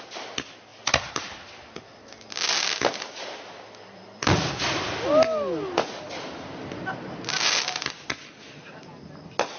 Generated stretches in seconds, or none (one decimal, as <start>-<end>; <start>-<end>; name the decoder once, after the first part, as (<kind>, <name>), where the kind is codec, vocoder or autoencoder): none